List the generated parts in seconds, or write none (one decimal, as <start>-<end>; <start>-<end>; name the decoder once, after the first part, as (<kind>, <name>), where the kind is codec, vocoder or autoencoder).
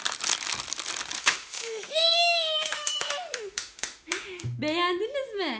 1.2-4.6 (autoencoder, DAC-VAE)